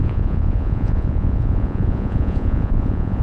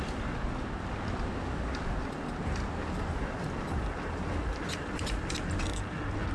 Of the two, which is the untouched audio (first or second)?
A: second